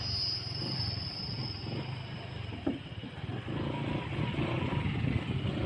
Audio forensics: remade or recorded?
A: recorded